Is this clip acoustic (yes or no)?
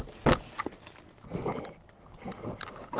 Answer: yes